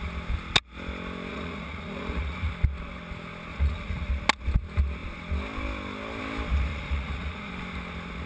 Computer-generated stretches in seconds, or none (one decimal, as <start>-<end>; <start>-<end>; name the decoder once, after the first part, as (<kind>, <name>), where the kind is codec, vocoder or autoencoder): 1.3-2.5 (vocoder, Vocos); 3.5-4.1; 6.7-7.5